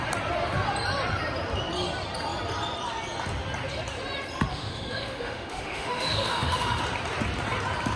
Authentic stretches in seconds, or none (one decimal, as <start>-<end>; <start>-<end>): 0.0-4.5; 6.8-8.0